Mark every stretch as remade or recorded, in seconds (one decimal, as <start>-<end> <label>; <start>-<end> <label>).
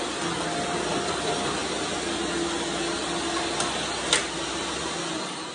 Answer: 0.0-5.5 recorded